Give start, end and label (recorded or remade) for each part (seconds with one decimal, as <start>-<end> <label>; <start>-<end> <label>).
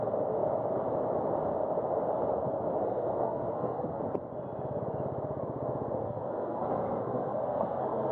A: 0.0-2.8 recorded; 2.8-4.0 remade; 4.0-6.0 recorded; 6.0-8.1 remade